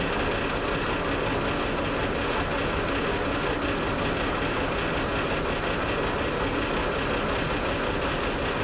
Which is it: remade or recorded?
recorded